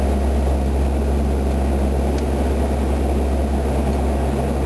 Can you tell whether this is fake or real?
real